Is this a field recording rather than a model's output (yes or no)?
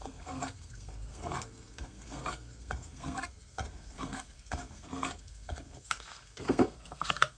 no